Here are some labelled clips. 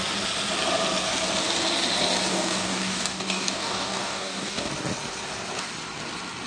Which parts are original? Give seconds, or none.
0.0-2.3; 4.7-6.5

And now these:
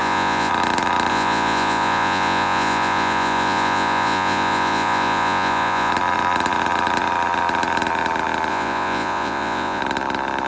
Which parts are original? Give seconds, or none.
0.5-1.1; 5.9-8.5; 9.8-10.5

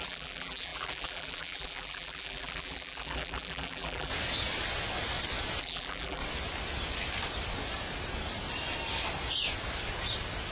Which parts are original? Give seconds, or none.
4.1-5.6; 6.2-10.5

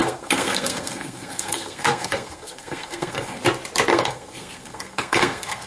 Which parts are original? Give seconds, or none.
3.4-3.9

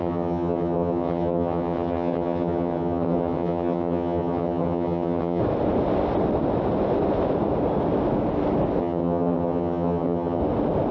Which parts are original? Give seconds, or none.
5.4-8.8; 10.4-10.9